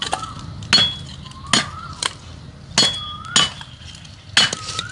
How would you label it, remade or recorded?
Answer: recorded